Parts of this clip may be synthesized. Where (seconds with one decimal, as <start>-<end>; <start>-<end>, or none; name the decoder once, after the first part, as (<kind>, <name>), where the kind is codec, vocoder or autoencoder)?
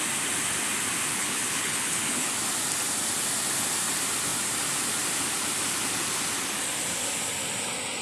1.1-2.3 (codec, HILCodec)